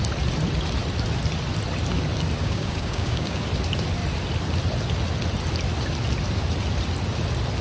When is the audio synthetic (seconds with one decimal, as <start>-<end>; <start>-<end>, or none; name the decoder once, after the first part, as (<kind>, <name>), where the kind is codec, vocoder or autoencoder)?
2.4-3.4 (codec, DAC)